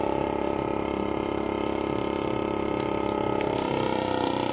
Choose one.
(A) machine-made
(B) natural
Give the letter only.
A